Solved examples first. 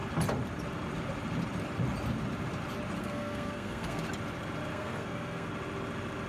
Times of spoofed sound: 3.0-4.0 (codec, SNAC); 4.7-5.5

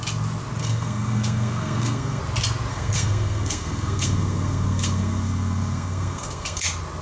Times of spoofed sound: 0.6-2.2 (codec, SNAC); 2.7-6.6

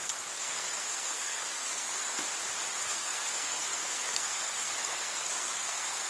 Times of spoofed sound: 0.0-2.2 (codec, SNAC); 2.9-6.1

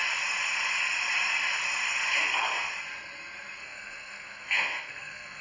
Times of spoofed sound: 3.6-5.4 (codec, SNAC)

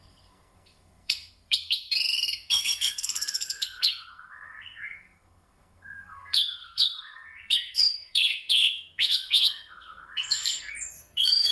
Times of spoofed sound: 0.0-11.5 (codec, SNAC)

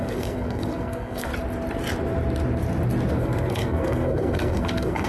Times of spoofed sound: 0.0-1.3 (codec, SNAC); 3.1-5.1

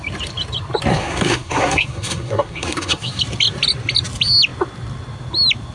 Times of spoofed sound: 0.9-3.2 (codec, SNAC)

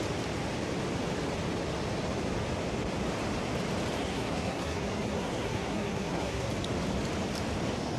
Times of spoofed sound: 4.0-6.5 (codec, SNAC)